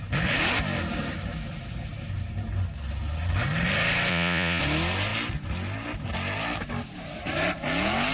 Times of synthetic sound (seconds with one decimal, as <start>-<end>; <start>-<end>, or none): 4.1-4.6